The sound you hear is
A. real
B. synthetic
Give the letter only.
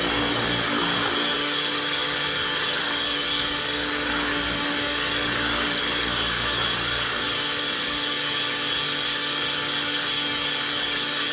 B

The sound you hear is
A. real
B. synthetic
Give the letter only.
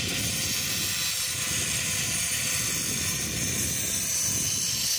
A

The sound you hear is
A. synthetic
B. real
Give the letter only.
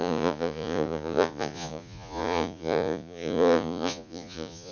A